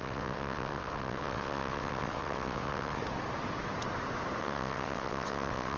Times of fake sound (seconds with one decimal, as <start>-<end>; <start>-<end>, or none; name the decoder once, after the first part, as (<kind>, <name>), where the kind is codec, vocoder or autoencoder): 0.0-3.0 (vocoder, WaveNeXt); 4.4-5.8